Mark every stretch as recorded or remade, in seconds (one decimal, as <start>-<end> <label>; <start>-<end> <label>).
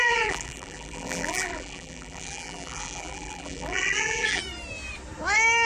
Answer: 0.0-4.4 remade; 4.4-5.7 recorded